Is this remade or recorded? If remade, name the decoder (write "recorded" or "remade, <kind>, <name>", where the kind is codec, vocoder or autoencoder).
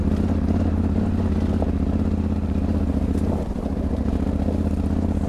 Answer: recorded